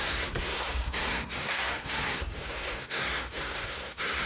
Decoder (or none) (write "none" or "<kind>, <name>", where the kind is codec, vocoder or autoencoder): codec, SNAC